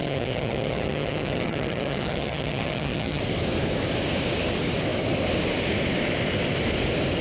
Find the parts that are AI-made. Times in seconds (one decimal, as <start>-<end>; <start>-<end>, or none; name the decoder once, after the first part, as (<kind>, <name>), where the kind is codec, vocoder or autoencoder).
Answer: 0.0-3.2 (vocoder, HiFi-GAN)